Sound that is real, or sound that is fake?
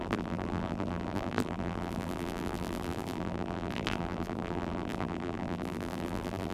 fake